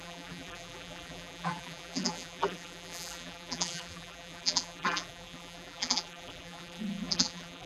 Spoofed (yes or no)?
yes